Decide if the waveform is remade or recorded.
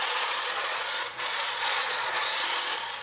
remade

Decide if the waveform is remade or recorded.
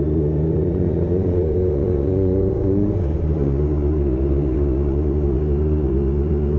remade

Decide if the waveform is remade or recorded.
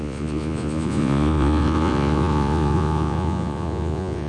remade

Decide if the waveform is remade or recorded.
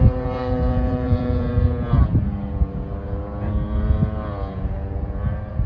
remade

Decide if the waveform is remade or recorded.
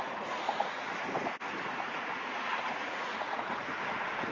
remade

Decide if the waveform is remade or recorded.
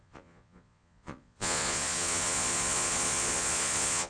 remade